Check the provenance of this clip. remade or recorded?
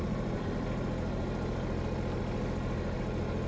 recorded